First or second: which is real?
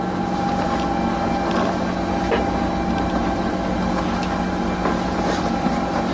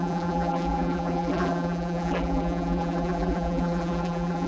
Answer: first